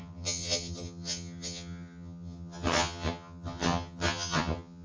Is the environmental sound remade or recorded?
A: remade